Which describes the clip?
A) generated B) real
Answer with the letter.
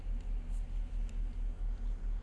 B